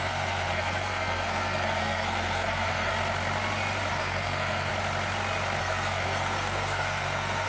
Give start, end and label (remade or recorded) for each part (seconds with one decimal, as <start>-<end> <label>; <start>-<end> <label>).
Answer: 0.0-2.9 remade; 2.9-3.9 recorded; 3.9-4.7 remade; 4.7-5.6 recorded; 5.6-7.5 remade